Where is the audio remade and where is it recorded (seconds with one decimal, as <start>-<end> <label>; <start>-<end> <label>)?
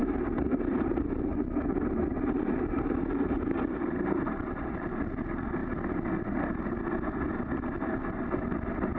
0.0-5.6 remade; 5.6-9.0 recorded